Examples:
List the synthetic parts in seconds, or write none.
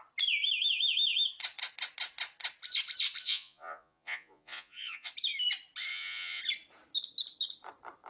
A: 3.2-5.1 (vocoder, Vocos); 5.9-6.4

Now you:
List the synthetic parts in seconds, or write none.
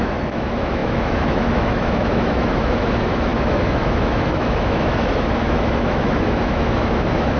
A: 0.0-7.4 (autoencoder, DAC-VAE)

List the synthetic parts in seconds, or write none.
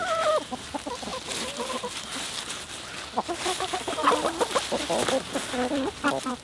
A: none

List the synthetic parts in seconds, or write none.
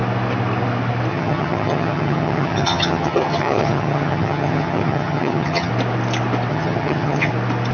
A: 1.1-5.7 (vocoder, HiFi-GAN); 6.5-7.3